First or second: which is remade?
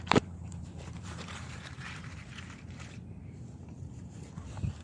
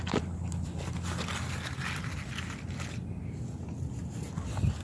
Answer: first